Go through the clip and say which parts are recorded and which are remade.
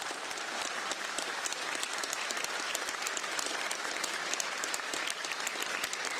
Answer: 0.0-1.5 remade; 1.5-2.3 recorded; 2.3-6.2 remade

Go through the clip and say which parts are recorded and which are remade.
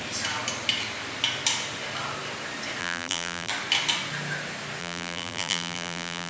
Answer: 0.0-2.8 recorded; 2.8-3.5 remade; 3.5-4.8 recorded; 4.8-6.3 remade